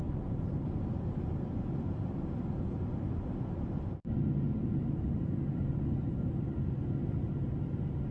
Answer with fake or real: real